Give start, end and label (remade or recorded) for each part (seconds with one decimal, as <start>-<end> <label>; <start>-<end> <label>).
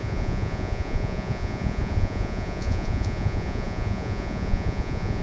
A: 0.0-5.2 remade